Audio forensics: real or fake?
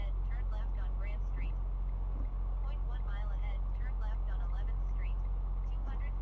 real